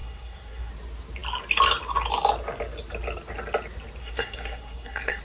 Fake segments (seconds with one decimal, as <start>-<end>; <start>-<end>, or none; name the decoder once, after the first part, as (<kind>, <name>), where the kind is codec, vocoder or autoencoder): 0.0-0.7 (codec, SNAC); 4.0-5.2